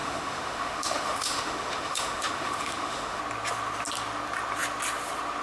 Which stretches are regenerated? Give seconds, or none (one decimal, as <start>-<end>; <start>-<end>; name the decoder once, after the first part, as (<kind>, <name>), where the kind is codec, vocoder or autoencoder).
0.0-3.2 (autoencoder, DAC-VAE)